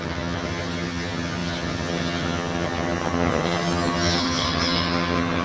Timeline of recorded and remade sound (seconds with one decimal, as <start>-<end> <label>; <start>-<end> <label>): 0.0-5.4 remade